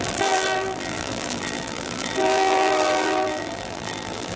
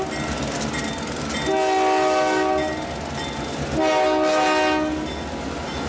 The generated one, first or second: first